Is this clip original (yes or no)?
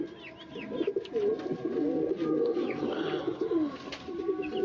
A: yes